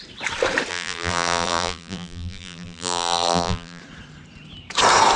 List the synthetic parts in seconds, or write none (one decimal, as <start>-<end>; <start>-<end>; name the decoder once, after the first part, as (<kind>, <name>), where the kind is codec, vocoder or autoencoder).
0.7-3.8 (vocoder, BigVGAN v2)